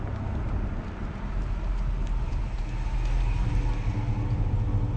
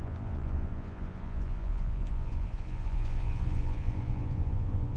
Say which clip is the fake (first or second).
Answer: second